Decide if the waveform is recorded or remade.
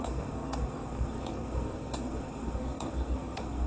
remade